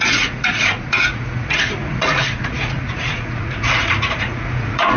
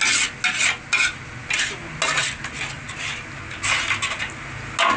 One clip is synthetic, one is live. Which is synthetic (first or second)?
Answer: first